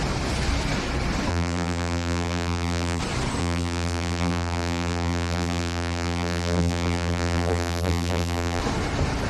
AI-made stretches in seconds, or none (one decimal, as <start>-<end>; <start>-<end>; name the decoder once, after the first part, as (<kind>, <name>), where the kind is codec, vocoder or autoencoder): 1.3-3.0 (vocoder, BigVGAN v2); 3.4-8.6